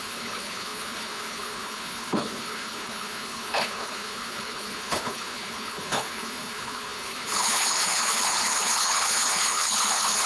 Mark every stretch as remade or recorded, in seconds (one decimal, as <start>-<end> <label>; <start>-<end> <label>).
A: 0.0-10.3 remade